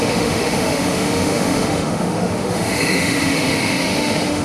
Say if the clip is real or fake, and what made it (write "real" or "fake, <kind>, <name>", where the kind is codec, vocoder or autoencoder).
fake, autoencoder, DAC-VAE